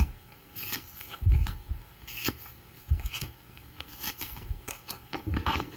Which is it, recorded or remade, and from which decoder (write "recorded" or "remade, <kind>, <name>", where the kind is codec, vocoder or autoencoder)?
remade, codec, SNAC